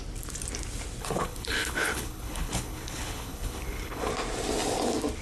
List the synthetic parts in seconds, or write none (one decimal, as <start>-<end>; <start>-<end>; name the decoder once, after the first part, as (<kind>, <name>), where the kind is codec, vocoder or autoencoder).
1.0-4.1 (codec, HILCodec)